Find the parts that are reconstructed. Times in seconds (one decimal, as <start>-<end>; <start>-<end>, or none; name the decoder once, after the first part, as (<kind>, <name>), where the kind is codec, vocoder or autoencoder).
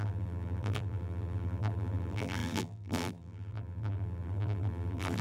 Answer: 0.0-5.2 (vocoder, BigVGAN v2)